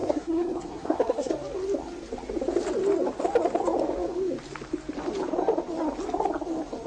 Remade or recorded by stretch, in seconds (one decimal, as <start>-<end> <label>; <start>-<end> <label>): 0.0-1.3 remade; 1.3-6.9 recorded